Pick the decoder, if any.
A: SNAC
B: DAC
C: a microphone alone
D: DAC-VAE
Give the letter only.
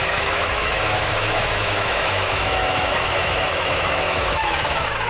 D